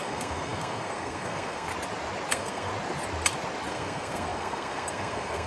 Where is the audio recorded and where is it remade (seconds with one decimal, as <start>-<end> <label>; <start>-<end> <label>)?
0.0-1.7 remade; 1.7-2.3 recorded; 2.3-2.7 remade; 2.7-3.7 recorded; 3.7-5.5 remade